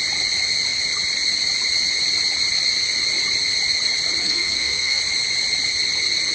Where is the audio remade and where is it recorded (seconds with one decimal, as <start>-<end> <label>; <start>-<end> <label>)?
0.0-4.2 recorded; 4.2-5.0 remade; 5.0-6.3 recorded